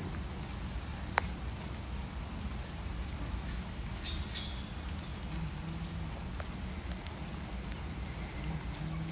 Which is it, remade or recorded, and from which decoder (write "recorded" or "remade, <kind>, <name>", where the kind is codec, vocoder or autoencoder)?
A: recorded